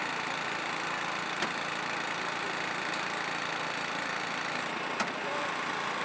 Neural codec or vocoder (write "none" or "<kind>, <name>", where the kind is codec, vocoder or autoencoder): none